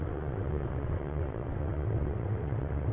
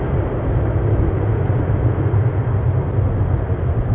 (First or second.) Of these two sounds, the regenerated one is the first